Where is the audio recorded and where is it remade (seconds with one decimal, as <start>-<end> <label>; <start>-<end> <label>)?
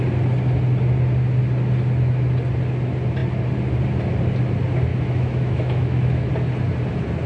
0.0-4.9 recorded; 4.9-6.3 remade; 6.3-7.3 recorded